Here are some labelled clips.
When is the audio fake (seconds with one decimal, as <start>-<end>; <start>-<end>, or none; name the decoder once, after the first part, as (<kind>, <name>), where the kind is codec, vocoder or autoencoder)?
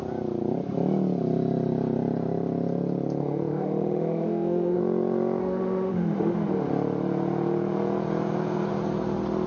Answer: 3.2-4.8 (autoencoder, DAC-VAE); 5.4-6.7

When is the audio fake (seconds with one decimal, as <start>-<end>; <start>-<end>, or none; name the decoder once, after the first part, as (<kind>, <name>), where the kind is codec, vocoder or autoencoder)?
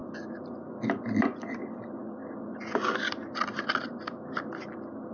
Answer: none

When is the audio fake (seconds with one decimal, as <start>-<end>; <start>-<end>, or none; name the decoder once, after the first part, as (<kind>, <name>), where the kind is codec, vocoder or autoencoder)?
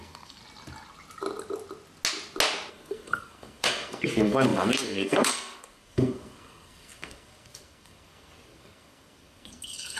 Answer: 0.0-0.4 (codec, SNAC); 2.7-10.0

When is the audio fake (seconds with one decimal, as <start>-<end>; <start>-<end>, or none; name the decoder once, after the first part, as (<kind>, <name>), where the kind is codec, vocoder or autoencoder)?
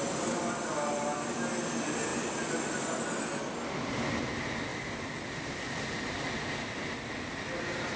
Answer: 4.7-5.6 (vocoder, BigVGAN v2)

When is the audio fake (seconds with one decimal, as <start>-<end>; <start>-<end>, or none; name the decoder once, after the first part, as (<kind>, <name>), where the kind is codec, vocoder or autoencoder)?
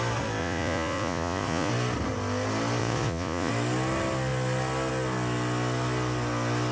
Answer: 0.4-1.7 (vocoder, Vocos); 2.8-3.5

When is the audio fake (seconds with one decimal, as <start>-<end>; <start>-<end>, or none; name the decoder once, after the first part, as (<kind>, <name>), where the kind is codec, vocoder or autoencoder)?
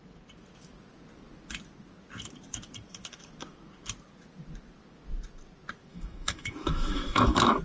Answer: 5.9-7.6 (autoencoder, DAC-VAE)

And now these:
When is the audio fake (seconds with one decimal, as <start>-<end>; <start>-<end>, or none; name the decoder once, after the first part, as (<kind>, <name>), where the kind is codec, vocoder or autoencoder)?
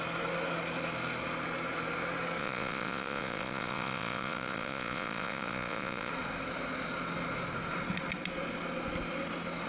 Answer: 2.4-6.1 (vocoder, Vocos)